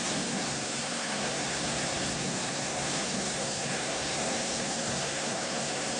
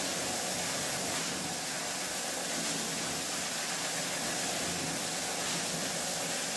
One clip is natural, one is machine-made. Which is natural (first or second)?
second